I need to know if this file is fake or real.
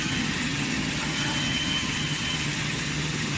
fake